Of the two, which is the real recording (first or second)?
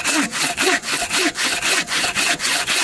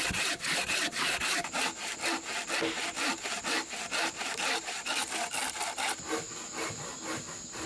second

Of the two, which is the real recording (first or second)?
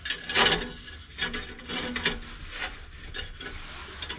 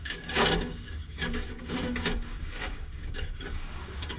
first